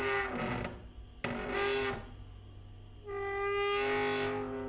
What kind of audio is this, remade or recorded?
recorded